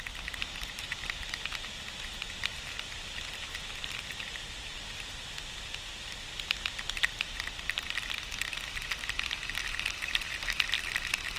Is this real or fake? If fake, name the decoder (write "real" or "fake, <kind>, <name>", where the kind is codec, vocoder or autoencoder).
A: real